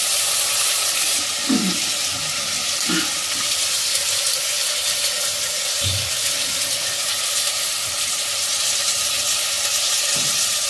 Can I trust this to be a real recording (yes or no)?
yes